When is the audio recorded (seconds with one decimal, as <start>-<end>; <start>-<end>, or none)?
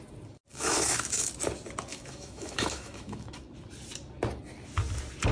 0.0-0.5; 1.3-1.9; 3.3-5.3